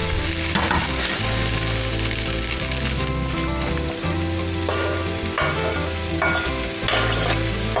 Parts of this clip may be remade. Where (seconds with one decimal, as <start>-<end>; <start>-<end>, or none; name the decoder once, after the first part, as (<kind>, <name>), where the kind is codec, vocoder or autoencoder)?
none